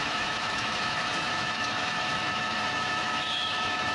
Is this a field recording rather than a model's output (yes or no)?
no